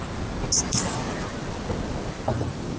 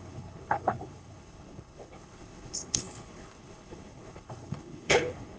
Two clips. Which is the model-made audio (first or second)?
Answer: second